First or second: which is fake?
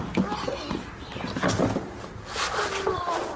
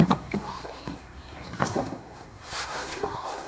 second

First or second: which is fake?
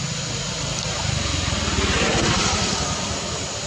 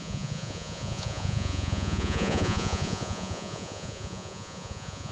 second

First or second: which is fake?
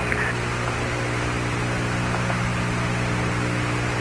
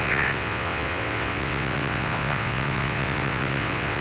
second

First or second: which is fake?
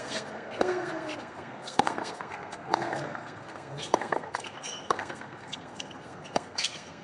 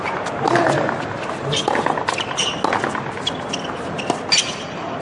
first